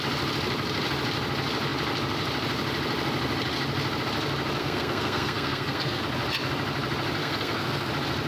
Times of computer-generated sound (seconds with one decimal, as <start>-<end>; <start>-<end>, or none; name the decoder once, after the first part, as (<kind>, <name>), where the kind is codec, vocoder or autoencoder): 4.6-6.0 (codec, SNAC); 7.2-7.9